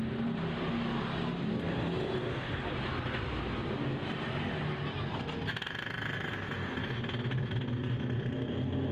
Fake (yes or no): no